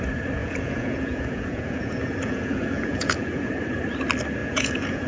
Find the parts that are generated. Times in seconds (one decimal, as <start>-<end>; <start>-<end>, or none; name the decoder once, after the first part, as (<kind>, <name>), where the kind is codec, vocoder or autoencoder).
0.4-3.5 (vocoder, Vocos); 4.4-5.1